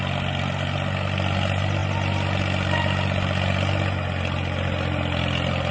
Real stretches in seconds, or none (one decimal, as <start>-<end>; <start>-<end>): 0.0-5.7